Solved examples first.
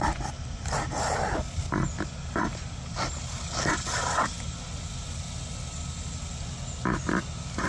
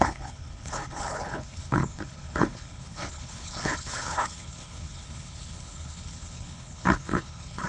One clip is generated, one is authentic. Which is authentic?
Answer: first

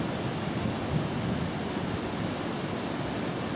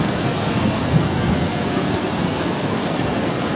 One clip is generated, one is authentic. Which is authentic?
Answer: first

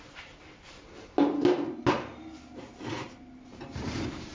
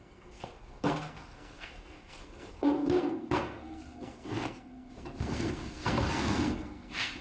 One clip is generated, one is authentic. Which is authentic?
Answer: first